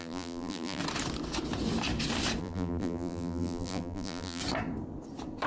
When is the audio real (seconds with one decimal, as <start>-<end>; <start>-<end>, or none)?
0.8-2.4; 4.4-5.5